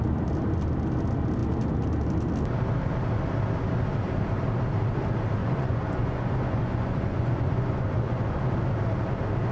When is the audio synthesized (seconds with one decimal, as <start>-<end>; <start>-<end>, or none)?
5.4-8.4